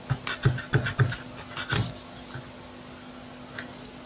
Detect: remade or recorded recorded